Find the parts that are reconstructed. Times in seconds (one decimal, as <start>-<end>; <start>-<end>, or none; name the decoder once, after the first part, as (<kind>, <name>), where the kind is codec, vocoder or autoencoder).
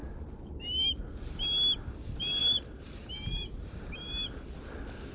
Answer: 2.4-4.1 (vocoder, BigVGAN v2)